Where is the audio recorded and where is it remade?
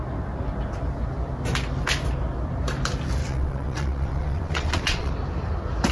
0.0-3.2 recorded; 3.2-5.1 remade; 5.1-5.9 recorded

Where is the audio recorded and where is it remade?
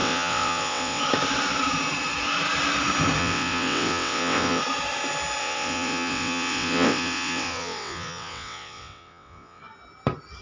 0.0-1.0 remade; 1.0-3.2 recorded; 3.2-4.6 remade; 4.6-5.4 recorded; 5.4-9.6 remade; 9.6-10.4 recorded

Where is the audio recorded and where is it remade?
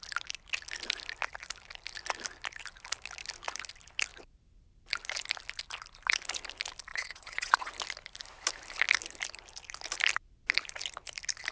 0.0-6.9 recorded; 6.9-7.7 remade; 7.7-11.5 recorded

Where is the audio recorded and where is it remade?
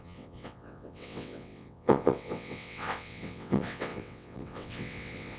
0.0-5.4 remade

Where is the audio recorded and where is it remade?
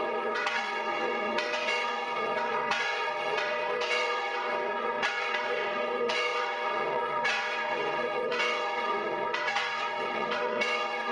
0.0-11.1 remade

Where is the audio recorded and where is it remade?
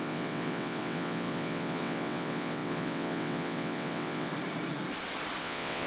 0.0-4.3 remade; 4.3-5.4 recorded; 5.4-5.9 remade